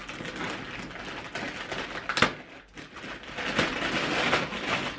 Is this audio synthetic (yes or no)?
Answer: no